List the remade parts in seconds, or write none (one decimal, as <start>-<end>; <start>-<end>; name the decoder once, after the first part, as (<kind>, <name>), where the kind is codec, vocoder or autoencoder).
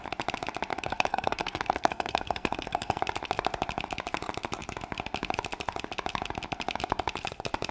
0.7-3.0 (codec, SNAC)